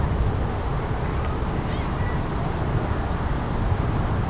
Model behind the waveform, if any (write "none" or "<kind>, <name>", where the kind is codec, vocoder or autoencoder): none